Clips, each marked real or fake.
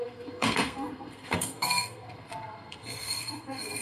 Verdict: fake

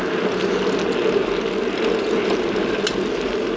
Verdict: real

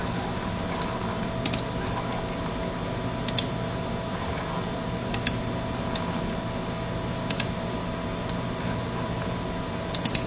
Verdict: real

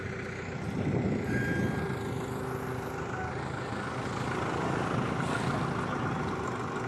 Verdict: real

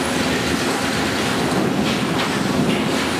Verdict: real